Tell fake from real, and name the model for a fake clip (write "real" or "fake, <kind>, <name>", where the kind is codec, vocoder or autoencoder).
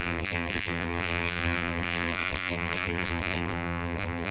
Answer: fake, vocoder, BigVGAN v2